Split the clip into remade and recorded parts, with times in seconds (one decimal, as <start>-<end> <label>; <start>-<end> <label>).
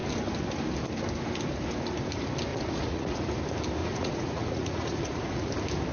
0.0-2.5 recorded; 2.5-3.3 remade; 3.3-3.8 recorded; 3.8-5.5 remade; 5.5-5.9 recorded